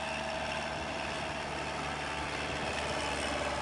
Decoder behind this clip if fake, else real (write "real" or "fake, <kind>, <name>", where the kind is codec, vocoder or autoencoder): real